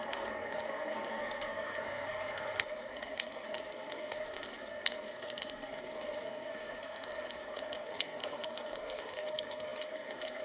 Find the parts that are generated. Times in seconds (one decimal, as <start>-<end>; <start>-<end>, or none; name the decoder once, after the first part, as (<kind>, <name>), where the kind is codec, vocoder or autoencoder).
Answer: 0.0-10.4 (codec, SNAC)